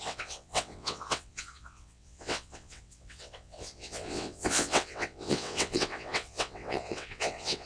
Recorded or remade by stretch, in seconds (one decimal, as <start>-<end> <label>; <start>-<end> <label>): 0.0-7.7 remade